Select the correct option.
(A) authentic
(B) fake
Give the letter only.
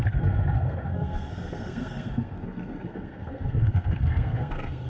B